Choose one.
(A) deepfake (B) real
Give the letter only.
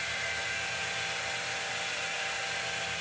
B